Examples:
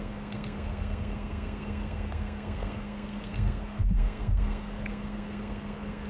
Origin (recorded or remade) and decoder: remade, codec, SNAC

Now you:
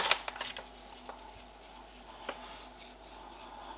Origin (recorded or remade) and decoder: recorded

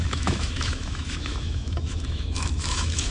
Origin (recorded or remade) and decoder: remade, autoencoder, DAC-VAE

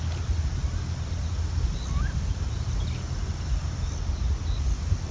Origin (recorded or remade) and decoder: recorded